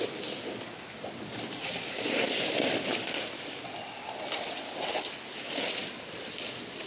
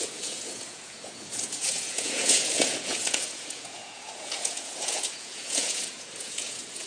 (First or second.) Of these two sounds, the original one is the first